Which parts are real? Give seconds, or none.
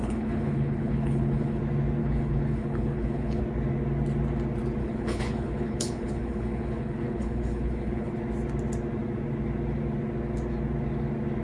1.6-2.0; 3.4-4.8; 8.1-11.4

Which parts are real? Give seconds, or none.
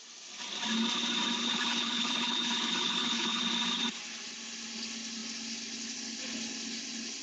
0.0-1.4; 3.4-7.2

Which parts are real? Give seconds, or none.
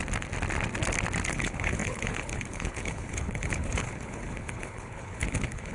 0.0-1.3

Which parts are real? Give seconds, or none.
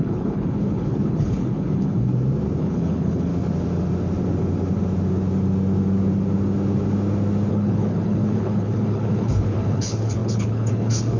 2.1-2.6; 3.3-7.5